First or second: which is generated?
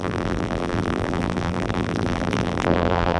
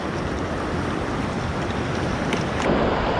first